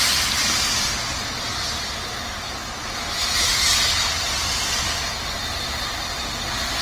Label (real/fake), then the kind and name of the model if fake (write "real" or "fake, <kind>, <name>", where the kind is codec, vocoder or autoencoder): real